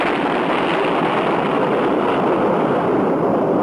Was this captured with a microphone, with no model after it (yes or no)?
yes